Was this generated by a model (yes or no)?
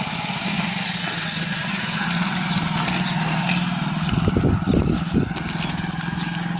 no